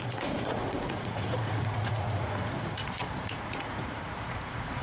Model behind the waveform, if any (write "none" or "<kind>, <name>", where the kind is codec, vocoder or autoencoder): vocoder, Vocos